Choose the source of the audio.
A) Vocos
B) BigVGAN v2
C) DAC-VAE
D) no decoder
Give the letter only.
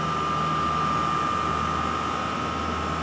D